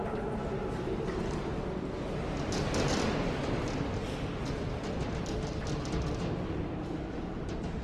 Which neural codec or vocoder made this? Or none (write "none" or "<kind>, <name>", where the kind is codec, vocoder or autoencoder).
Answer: none